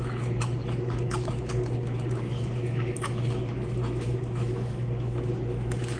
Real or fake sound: fake